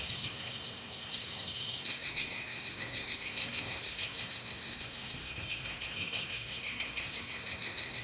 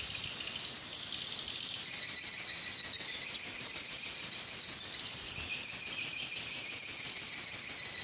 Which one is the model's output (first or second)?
first